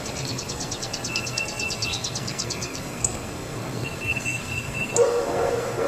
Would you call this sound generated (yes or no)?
yes